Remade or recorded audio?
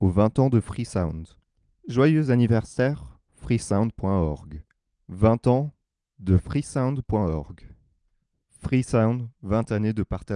recorded